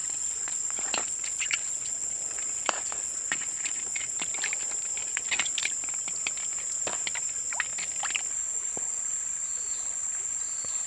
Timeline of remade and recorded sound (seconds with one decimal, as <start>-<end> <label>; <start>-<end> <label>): 0.0-4.2 remade; 4.2-5.0 recorded; 5.0-5.5 remade; 5.5-10.9 recorded